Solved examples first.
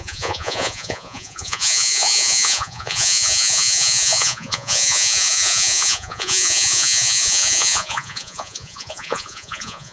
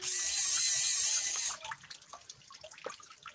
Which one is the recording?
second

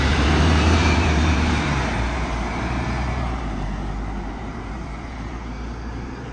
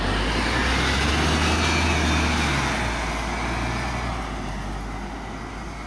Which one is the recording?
second